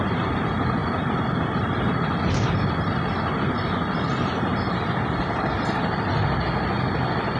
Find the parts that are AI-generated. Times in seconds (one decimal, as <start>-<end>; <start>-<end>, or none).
none